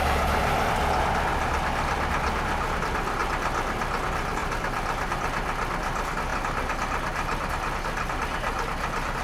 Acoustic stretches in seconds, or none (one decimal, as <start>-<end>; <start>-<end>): 0.0-1.3; 2.1-4.4; 5.1-9.2